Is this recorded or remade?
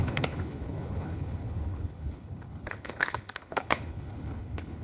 remade